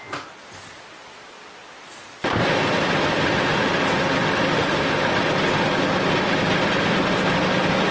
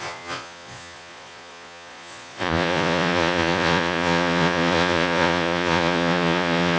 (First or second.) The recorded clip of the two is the first